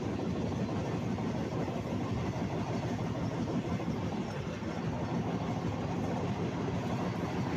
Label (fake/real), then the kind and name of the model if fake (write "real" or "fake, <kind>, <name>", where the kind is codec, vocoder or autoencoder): real